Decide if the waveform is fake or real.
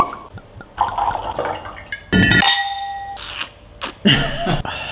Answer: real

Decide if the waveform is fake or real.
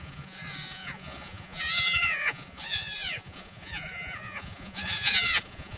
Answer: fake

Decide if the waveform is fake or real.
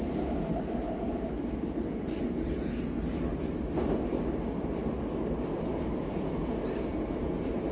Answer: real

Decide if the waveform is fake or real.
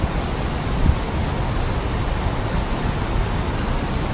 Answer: real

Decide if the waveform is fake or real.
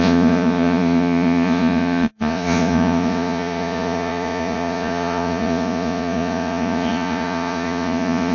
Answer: fake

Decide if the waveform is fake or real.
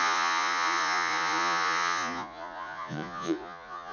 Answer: fake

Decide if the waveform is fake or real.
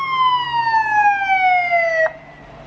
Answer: real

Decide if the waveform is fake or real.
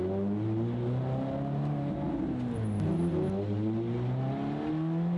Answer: real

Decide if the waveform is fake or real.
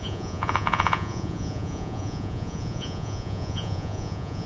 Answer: fake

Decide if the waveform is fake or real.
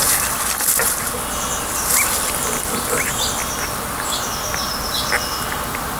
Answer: real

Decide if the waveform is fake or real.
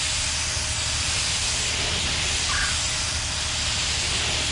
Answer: real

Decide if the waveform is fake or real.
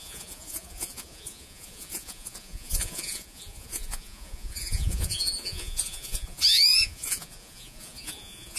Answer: fake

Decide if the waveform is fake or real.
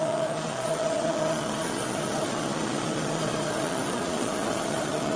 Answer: fake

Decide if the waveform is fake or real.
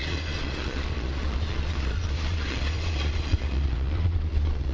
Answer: fake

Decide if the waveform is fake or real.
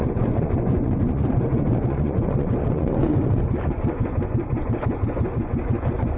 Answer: fake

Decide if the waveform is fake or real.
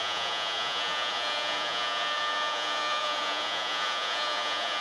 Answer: fake